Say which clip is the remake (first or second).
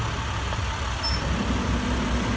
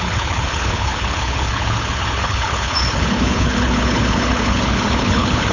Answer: second